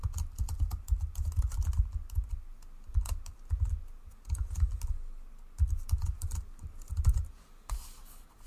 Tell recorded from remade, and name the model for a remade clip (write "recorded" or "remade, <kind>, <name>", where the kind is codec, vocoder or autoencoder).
recorded